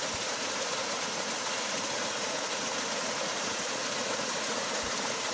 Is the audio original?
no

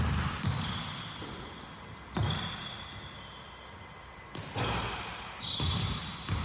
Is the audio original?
yes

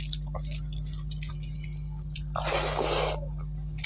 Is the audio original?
yes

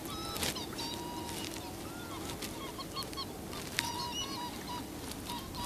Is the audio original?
yes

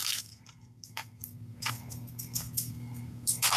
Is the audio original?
no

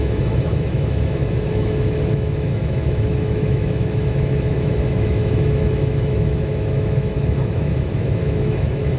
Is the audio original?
no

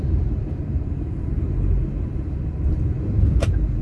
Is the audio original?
no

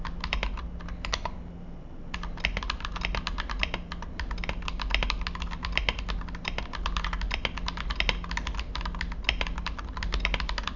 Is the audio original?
yes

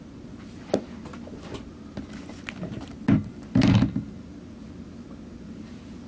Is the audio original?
yes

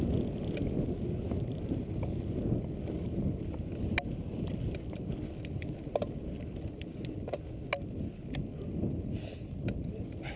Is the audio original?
yes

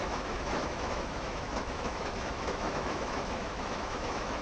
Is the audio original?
no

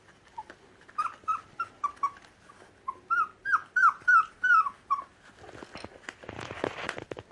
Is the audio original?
yes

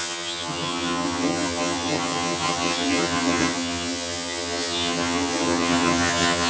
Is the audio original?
no